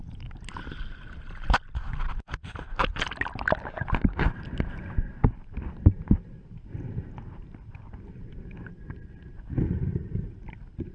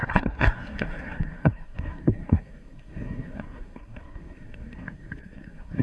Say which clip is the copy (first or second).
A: second